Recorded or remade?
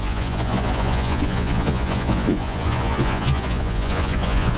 remade